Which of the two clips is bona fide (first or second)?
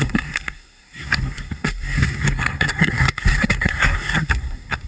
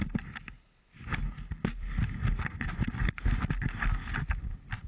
second